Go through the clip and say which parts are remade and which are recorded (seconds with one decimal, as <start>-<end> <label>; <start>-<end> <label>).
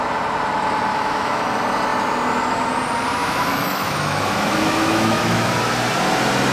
0.0-0.9 recorded; 0.9-1.4 remade; 1.4-3.2 recorded; 3.2-5.6 remade; 5.6-6.5 recorded